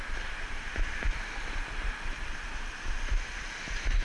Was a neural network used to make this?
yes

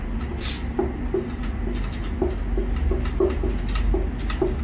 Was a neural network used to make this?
no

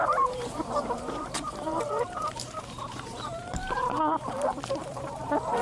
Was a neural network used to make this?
yes